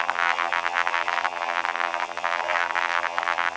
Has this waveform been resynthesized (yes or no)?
yes